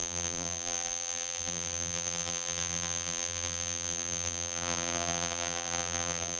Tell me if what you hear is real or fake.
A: fake